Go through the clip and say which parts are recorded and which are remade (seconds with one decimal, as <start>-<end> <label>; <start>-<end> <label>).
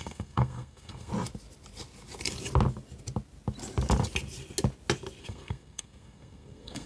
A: 0.0-1.1 remade; 1.1-5.2 recorded; 5.2-6.9 remade